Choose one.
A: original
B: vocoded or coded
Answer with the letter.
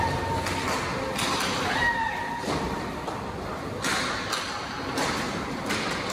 A